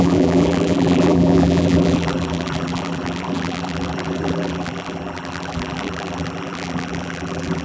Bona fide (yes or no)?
no